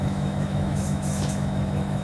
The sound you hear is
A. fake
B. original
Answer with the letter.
A